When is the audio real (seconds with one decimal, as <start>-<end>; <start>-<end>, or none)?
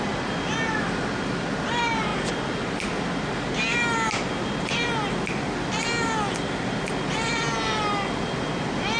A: 0.0-9.0